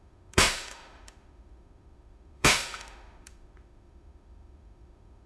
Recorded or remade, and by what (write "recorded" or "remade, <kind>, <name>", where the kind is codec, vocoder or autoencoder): remade, autoencoder, DAC-VAE